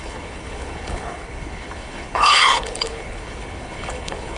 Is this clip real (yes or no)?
no